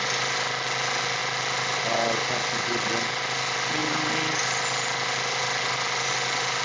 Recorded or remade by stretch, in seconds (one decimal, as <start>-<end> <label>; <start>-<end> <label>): 0.0-6.6 recorded